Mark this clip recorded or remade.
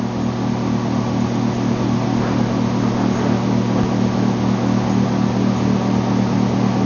recorded